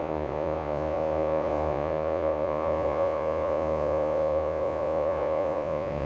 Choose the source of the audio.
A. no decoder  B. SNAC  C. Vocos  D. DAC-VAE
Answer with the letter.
C